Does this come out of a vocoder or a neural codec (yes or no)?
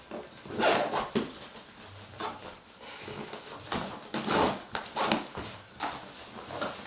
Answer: no